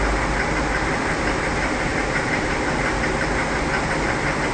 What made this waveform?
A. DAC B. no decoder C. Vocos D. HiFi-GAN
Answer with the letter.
B